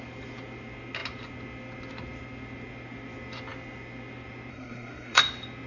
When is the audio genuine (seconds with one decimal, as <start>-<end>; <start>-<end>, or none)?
0.0-4.5; 5.2-5.7